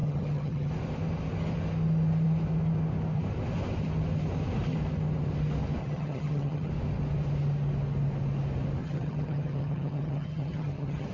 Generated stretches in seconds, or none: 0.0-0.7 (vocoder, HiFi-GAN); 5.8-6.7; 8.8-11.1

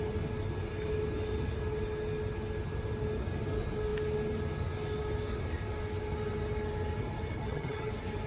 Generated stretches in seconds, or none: 7.4-7.9 (vocoder, HiFi-GAN)

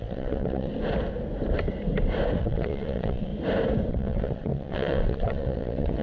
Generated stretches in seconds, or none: 0.0-0.7 (vocoder, WaveNeXt); 2.4-3.3; 3.9-6.0

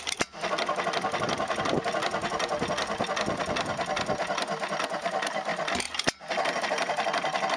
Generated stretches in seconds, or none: none

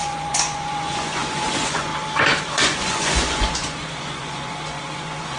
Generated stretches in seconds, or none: 0.0-1.9 (vocoder, Vocos); 2.4-5.4

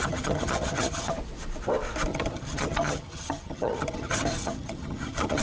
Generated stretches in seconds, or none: 0.0-1.1 (vocoder, HiFi-GAN); 2.1-5.4

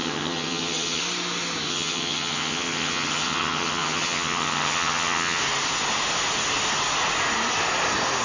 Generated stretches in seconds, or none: 0.0-1.0 (vocoder, HiFi-GAN); 1.7-5.4

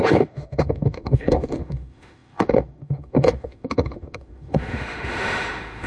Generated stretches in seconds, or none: 0.0-5.9 (autoencoder, DAC-VAE)